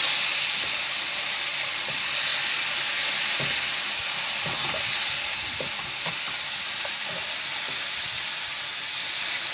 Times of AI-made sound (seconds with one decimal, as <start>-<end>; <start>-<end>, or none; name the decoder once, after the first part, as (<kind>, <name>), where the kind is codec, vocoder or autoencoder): 2.3-2.8 (vocoder, BigVGAN v2)